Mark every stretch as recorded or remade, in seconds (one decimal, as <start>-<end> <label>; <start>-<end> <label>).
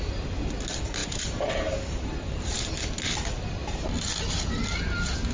0.0-1.0 recorded; 1.0-2.7 remade; 2.7-5.3 recorded